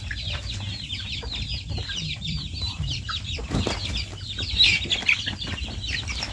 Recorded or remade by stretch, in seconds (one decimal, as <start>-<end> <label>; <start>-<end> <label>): 0.0-1.8 recorded; 1.8-3.4 remade; 3.4-6.3 recorded